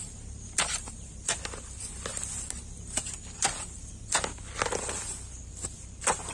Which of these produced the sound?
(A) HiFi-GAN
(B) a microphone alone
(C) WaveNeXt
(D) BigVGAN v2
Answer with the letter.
B